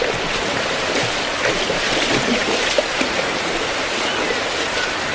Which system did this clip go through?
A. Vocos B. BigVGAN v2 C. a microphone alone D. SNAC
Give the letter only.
B